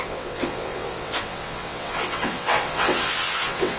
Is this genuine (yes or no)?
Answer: no